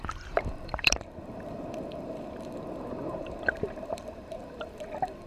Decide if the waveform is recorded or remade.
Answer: remade